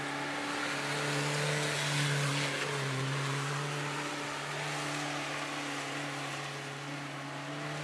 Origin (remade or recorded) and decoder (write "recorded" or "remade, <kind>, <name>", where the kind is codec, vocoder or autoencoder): recorded